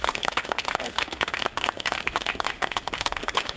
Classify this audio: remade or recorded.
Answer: remade